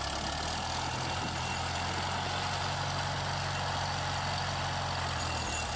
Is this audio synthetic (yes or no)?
no